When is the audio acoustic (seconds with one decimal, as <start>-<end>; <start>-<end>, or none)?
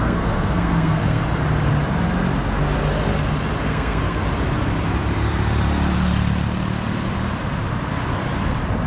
1.2-3.6; 4.2-8.9